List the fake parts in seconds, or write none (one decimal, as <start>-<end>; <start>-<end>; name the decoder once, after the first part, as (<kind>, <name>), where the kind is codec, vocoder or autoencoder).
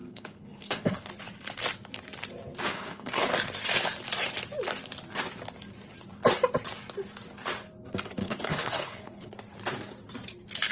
0.0-1.1 (codec, HILCodec); 2.7-3.3; 8.2-9.3